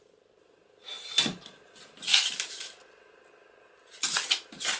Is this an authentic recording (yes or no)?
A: yes